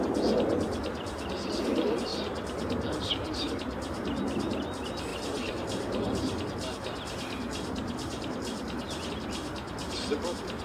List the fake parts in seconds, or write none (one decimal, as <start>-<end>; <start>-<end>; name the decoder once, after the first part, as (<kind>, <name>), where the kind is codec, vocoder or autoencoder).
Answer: none